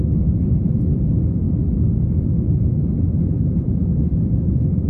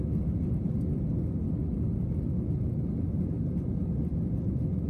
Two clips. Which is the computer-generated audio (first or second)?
first